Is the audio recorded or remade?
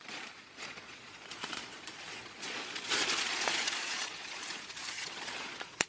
remade